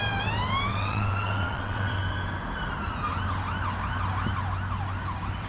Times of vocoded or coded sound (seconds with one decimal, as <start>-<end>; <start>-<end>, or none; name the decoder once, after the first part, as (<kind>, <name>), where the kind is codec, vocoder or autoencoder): 0.7-2.0 (vocoder, WaveNeXt)